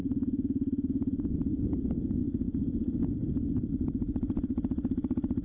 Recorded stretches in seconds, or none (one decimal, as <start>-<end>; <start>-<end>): 1.3-5.4